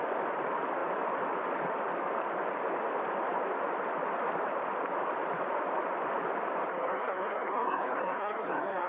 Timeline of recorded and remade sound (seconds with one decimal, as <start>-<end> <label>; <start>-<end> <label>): 0.0-6.7 recorded; 6.7-8.9 remade